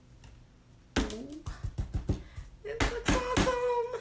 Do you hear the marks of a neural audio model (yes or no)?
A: no